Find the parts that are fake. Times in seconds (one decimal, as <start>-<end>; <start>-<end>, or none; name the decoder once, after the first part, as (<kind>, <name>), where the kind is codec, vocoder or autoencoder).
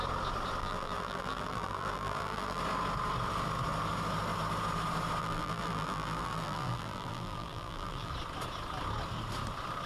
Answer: 0.6-2.6 (vocoder, BigVGAN v2); 5.2-8.1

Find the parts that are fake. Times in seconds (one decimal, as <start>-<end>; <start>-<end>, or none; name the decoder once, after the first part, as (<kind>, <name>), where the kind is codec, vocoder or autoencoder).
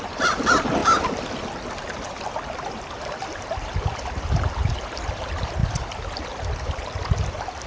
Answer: 0.0-0.8 (vocoder, BigVGAN v2); 3.0-5.6; 7.3-7.7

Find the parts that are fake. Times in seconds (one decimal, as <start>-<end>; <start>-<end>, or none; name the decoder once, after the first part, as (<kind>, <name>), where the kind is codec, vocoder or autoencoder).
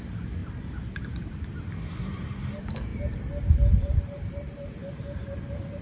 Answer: 0.0-0.4 (vocoder, BigVGAN v2); 1.1-2.9; 3.7-5.8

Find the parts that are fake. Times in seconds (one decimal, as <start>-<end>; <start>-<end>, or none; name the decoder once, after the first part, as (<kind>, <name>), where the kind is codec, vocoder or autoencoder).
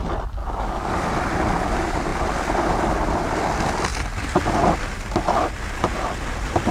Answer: 0.4-1.1 (codec, DAC)